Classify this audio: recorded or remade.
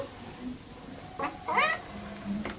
recorded